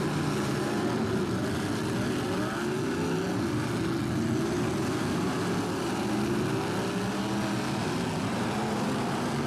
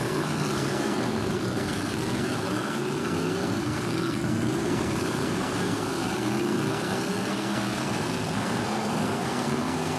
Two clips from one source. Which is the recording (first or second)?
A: first